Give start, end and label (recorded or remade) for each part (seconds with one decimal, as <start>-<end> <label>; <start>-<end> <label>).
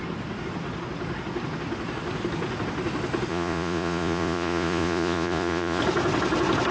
0.0-3.3 recorded; 3.3-5.8 remade; 5.8-6.7 recorded